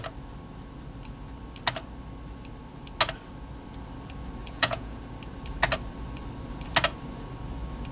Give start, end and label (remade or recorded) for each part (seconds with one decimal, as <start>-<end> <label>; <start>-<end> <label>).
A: 0.0-4.4 recorded; 4.4-5.0 remade; 5.0-7.9 recorded